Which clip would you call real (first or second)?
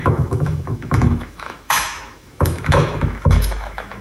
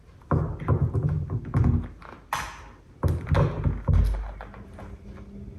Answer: second